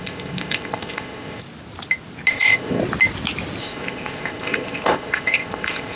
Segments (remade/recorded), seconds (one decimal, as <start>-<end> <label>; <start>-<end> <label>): 0.0-1.4 remade; 1.4-2.3 recorded; 2.3-2.8 remade; 2.8-3.6 recorded; 3.6-6.0 remade